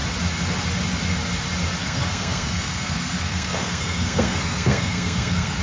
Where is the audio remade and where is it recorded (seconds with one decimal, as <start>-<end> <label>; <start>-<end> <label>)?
0.0-1.8 recorded; 1.8-5.6 remade